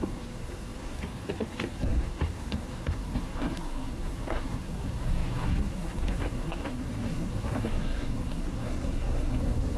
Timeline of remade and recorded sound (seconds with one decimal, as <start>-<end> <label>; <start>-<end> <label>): 0.0-9.8 remade